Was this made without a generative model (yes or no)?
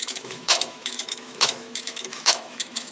no